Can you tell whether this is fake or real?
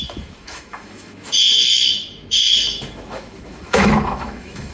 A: fake